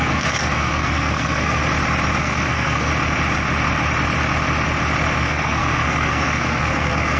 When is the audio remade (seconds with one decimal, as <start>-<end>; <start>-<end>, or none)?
0.0-1.6; 2.2-2.9; 5.2-7.2